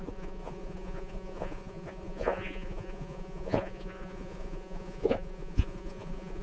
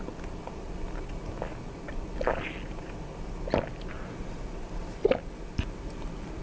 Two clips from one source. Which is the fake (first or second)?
first